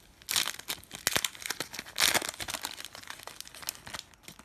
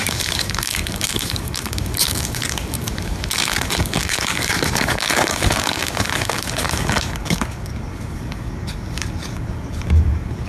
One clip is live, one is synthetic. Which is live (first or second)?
first